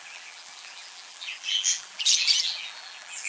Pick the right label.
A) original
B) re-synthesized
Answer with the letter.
B